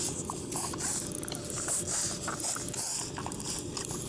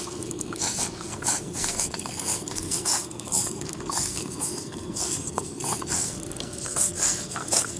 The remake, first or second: second